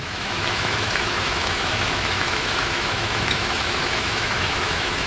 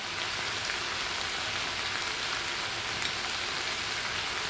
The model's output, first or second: first